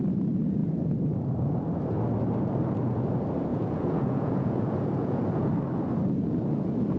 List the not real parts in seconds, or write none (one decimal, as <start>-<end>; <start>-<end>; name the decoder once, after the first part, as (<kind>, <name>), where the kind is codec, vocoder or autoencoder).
3.5-5.5 (vocoder, Vocos)